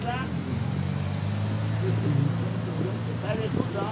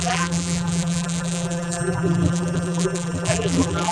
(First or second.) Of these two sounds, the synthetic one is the second